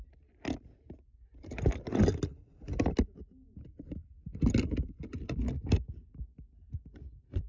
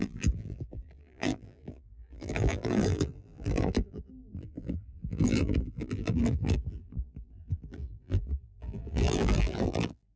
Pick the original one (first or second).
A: first